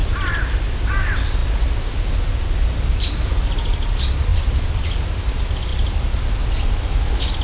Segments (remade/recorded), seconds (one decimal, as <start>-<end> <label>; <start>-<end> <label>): 0.0-4.3 recorded; 4.3-5.3 remade; 5.3-7.4 recorded